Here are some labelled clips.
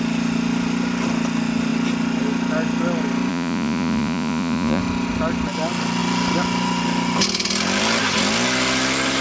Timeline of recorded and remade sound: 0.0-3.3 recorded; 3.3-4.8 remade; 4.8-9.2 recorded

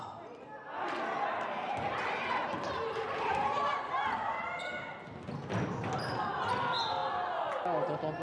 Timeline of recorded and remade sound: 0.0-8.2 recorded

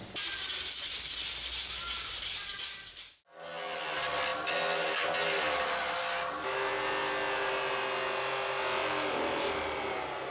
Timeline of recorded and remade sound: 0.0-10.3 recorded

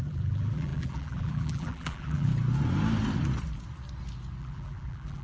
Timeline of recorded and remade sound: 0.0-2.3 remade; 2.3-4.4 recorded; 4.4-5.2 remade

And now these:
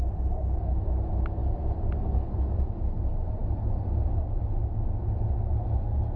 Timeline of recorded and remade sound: 0.0-6.2 recorded

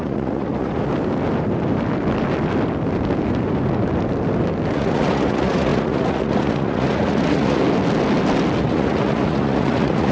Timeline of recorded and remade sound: 0.0-0.9 remade; 0.9-4.7 recorded; 4.7-7.6 remade; 7.6-8.6 recorded; 8.6-10.1 remade

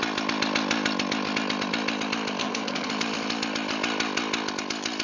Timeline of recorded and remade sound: 0.0-2.4 recorded; 2.4-2.9 remade; 2.9-5.0 recorded